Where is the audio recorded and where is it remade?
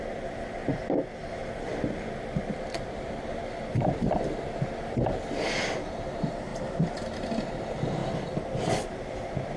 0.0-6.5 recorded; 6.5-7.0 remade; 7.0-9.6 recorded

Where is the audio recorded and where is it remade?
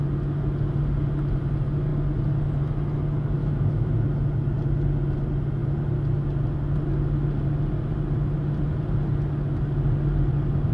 0.0-3.4 recorded; 3.4-3.9 remade; 3.9-10.7 recorded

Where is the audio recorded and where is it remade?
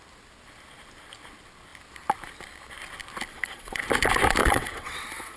0.0-3.3 recorded; 3.3-3.8 remade; 3.8-4.4 recorded; 4.4-5.4 remade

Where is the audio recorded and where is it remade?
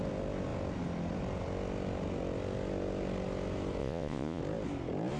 0.0-3.8 recorded; 3.8-4.4 remade; 4.4-5.2 recorded